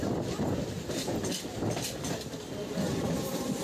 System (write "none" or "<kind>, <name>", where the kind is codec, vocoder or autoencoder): vocoder, BigVGAN v2